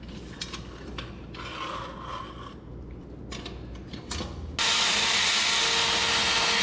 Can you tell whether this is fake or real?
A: real